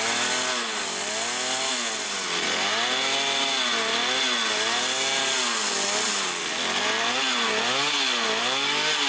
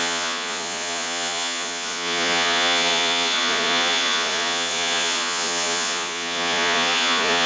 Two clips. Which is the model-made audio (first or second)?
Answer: second